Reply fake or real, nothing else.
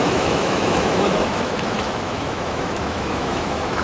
fake